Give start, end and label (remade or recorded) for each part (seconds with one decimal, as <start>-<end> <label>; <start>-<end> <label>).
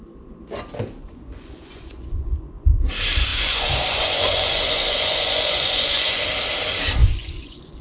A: 0.0-1.0 recorded; 1.0-2.8 remade; 2.8-3.3 recorded; 3.3-6.2 remade; 6.2-7.0 recorded; 7.0-7.8 remade